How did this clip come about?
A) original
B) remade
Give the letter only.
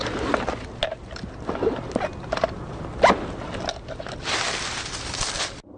A